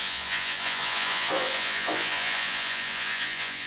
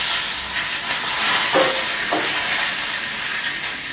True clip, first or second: second